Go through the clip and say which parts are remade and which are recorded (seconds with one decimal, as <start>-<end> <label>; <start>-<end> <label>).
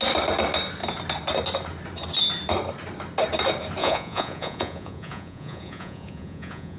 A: 0.0-3.8 recorded; 3.8-6.8 remade